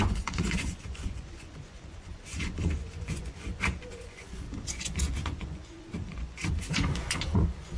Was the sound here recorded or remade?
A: remade